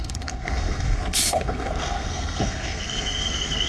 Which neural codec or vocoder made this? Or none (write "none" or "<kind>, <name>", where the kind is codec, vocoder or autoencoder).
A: codec, SNAC